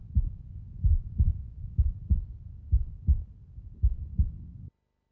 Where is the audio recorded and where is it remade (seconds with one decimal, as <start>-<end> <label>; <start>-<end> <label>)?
0.0-0.5 recorded; 0.5-1.9 remade; 1.9-5.1 recorded